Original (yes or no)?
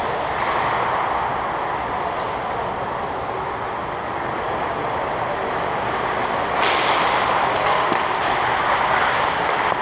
yes